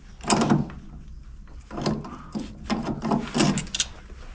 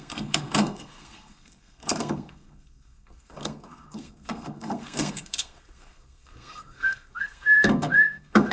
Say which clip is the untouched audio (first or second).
first